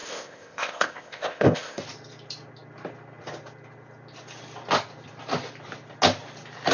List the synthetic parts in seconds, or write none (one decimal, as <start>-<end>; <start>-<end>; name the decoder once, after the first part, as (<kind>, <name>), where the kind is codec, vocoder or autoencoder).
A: 0.0-1.8 (codec, ZipCodec)